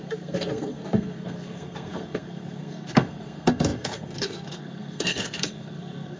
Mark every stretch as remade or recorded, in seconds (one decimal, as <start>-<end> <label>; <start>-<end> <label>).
0.0-6.2 remade